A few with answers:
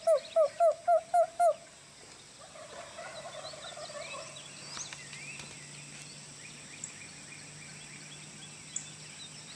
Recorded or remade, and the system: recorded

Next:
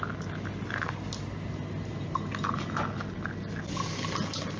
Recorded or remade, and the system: recorded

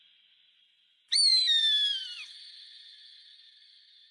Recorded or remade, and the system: recorded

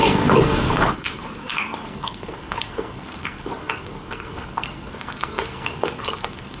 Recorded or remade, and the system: remade, codec, SNAC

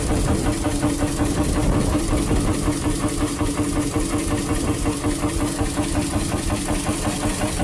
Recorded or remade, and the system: recorded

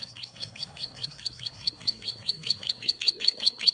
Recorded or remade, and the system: remade, codec, SNAC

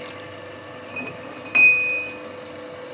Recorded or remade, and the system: recorded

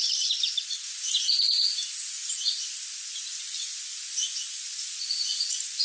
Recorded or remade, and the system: recorded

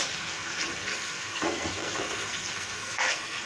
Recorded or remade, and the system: remade, codec, SNAC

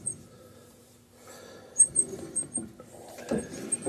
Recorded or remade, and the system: recorded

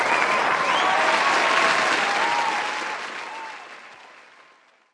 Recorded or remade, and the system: recorded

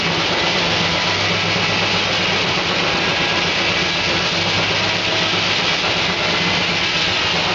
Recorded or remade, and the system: recorded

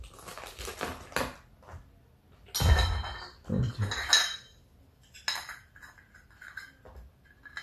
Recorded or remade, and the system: recorded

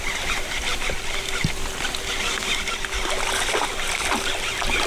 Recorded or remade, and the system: recorded